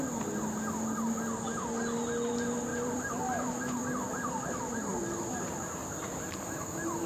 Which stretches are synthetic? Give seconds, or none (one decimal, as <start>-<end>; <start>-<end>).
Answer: 2.7-3.8; 5.8-6.6

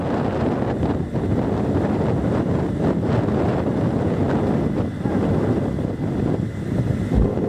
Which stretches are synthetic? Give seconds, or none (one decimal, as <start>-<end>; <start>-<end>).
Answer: none

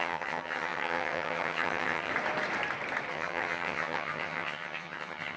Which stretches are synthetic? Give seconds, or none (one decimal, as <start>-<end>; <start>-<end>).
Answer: 0.0-2.1; 3.1-5.4

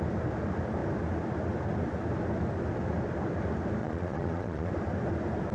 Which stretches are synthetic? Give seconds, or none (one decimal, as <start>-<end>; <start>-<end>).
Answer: 3.8-4.7